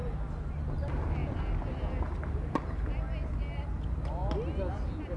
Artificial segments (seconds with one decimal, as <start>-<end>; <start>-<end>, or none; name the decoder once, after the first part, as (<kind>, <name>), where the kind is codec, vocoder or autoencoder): none